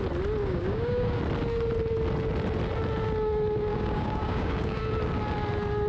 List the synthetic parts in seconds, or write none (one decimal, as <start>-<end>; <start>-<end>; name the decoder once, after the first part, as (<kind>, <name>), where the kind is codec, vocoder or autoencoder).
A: 0.4-1.2 (codec, DAC); 3.7-4.8